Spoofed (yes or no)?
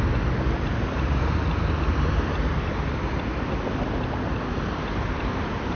yes